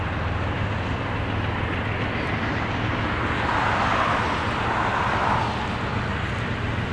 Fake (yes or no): no